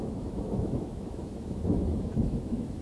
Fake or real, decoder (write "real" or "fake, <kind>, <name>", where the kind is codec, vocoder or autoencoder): fake, autoencoder, DAC-VAE